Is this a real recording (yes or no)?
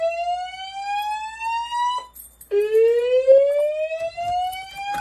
yes